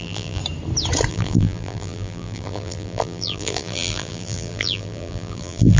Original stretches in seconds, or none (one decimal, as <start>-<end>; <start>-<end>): 0.4-1.1